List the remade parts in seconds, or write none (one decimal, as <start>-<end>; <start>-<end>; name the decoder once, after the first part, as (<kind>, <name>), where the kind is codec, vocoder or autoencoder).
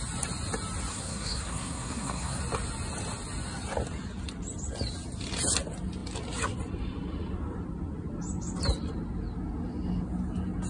0.9-2.4 (codec, SNAC)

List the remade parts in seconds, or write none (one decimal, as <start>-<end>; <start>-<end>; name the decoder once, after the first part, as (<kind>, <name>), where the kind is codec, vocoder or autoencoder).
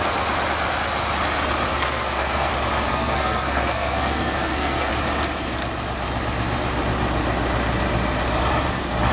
1.7-2.5 (codec, SNAC); 2.9-4.9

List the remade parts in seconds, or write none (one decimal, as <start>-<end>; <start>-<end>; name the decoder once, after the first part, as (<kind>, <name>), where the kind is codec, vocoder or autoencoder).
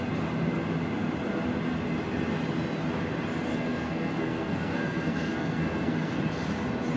3.5-6.2 (codec, SNAC)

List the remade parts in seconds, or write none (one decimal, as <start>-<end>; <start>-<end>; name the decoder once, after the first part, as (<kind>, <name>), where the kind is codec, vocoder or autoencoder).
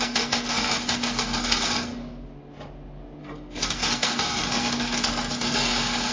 0.0-2.0 (codec, SNAC); 3.2-6.1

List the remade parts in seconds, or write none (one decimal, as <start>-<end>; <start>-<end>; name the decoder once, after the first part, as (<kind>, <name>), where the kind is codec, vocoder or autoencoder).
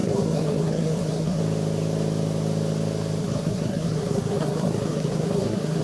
0.0-1.4 (codec, SNAC); 3.2-5.8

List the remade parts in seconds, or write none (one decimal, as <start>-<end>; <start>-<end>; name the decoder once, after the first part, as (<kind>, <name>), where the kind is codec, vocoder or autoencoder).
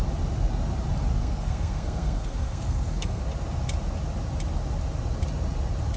1.2-3.2 (codec, SNAC)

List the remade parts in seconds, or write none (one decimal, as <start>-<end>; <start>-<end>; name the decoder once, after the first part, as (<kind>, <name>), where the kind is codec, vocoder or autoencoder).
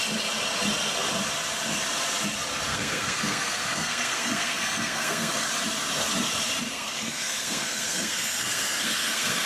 2.7-5.5 (codec, SNAC); 6.7-9.5